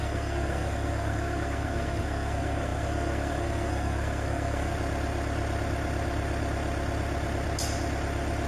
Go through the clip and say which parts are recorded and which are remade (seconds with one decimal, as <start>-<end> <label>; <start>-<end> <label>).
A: 0.0-4.7 remade; 4.7-8.5 recorded